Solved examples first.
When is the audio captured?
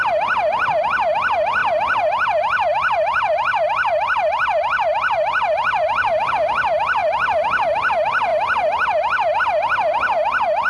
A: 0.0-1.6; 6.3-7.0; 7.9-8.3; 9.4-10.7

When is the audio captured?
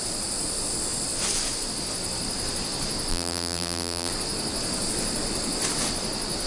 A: 0.0-3.1; 4.1-6.5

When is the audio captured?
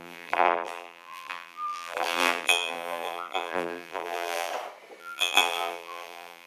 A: 4.5-5.0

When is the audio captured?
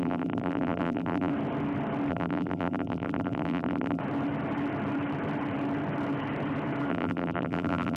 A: 1.3-2.1; 4.0-6.9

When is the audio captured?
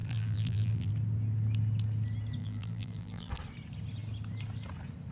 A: 0.9-2.4; 3.3-5.1